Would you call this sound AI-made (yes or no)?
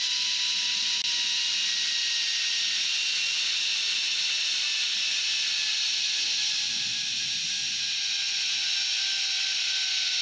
no